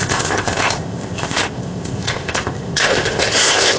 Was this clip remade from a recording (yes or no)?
yes